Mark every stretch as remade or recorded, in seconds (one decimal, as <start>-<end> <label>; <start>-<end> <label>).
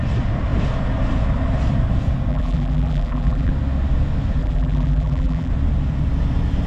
0.0-2.3 recorded; 2.3-3.5 remade; 3.5-4.4 recorded; 4.4-5.5 remade; 5.5-6.7 recorded